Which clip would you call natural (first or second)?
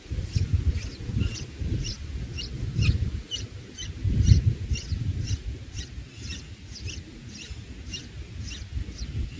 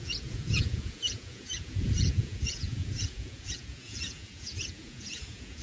first